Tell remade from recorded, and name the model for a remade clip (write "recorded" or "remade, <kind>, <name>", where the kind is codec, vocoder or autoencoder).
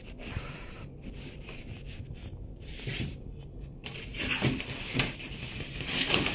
remade, vocoder, BigVGAN v2